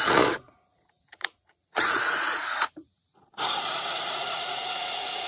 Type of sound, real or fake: fake